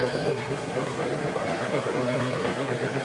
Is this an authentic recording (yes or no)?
no